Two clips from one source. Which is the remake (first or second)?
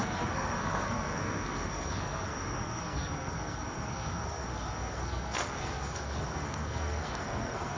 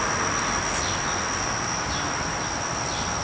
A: first